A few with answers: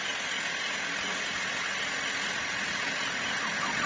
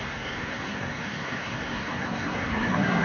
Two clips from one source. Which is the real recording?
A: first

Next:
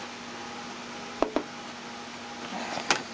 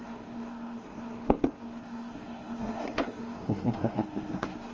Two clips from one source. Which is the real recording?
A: first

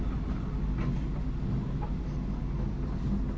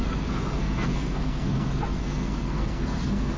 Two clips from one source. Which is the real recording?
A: first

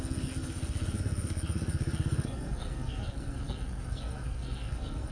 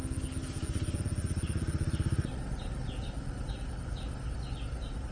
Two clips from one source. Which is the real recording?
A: second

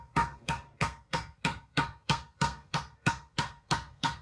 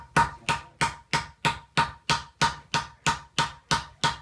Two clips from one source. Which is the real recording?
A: second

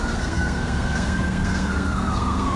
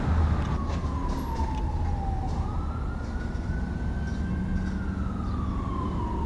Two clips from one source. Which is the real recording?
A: second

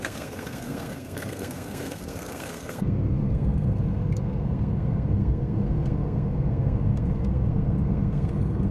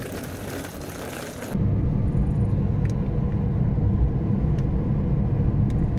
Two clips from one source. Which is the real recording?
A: second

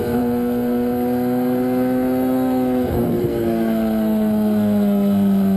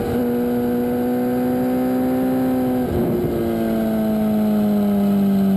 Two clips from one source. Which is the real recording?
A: second